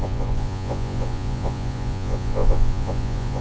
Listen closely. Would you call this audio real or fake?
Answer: fake